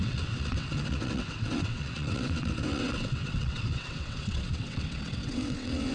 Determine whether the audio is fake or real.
fake